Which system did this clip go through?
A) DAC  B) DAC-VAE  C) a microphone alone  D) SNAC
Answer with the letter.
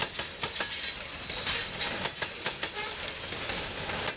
C